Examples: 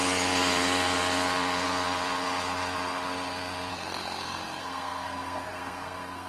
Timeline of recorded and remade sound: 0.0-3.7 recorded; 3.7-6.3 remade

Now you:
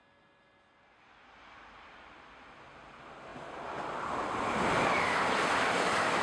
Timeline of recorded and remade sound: 0.0-6.2 recorded